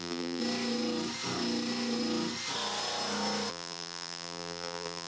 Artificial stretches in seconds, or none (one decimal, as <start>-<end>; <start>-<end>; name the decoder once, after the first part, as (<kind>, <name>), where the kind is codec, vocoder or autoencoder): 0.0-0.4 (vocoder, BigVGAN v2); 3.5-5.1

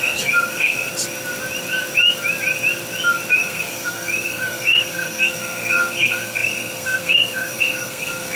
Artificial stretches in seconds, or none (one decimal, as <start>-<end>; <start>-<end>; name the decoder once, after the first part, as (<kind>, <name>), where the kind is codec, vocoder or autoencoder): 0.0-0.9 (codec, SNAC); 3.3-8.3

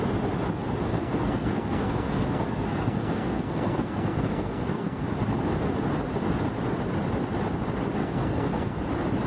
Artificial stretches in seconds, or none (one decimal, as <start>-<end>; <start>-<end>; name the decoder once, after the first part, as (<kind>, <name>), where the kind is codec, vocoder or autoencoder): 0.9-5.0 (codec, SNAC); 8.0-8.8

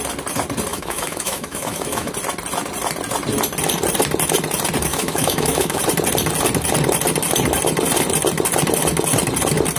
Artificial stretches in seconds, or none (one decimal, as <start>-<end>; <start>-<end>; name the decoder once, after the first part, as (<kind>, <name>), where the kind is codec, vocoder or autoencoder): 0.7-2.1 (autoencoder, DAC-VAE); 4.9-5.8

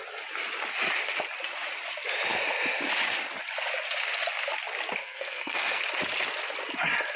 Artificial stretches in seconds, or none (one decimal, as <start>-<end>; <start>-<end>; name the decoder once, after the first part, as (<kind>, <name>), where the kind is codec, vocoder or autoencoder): 5.0-5.8 (codec, SNAC)

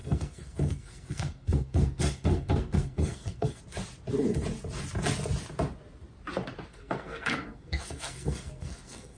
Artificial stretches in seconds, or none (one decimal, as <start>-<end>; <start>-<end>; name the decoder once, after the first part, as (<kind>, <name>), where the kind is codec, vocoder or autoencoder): 0.0-3.6 (codec, SNAC); 6.7-9.2

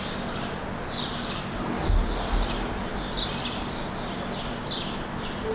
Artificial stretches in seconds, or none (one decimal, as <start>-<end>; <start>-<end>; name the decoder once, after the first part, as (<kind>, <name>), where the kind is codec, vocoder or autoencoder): none

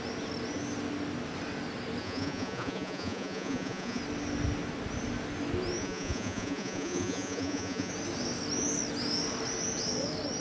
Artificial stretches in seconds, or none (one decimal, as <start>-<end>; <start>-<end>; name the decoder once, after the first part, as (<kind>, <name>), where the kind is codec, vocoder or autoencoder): 2.0-4.0 (vocoder, Vocos); 5.8-7.9